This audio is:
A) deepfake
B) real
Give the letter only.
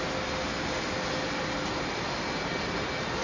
B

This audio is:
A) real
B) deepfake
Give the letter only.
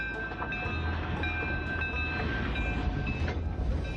A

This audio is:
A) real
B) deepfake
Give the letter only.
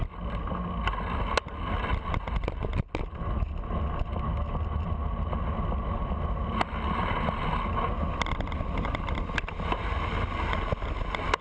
A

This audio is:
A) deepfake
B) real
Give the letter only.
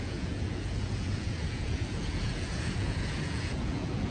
A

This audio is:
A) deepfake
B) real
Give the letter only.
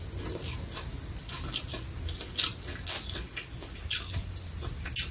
B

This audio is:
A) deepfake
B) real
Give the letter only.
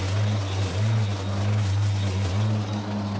B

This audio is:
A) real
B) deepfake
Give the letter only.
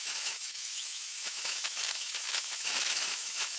B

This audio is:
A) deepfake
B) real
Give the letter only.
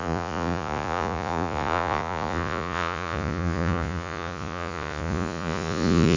A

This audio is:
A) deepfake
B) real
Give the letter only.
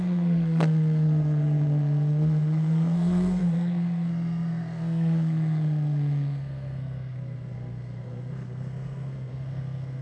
A